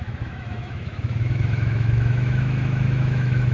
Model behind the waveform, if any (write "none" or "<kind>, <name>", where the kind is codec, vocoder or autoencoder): autoencoder, DAC-VAE